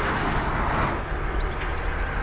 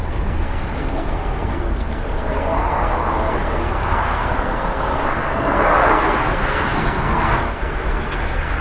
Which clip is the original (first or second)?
first